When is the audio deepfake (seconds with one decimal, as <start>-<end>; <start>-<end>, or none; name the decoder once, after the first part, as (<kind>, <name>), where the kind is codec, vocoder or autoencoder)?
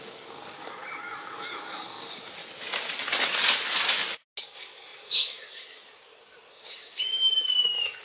0.0-2.4 (codec, DAC); 4.4-8.0